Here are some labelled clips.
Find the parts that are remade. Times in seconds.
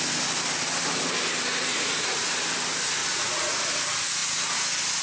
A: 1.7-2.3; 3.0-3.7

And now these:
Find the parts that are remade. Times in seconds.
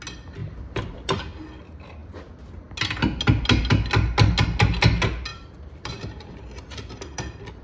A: 0.4-1.1; 5.3-5.9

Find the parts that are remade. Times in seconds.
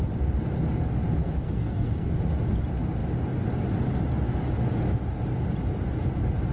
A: 1.2-2.1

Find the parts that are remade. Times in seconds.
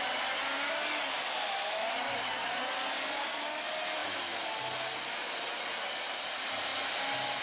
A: none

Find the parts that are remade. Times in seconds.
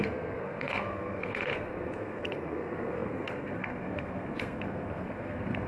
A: 0.0-5.7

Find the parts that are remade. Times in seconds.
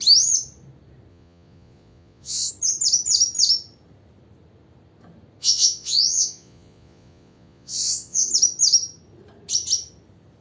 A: 1.1-2.5; 5.4-8.3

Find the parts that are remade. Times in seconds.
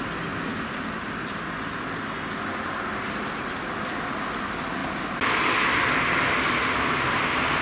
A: none